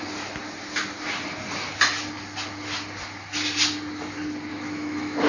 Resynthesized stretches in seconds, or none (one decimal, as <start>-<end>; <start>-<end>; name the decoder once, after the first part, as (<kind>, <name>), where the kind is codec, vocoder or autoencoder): 4.5-5.3 (autoencoder, DAC-VAE)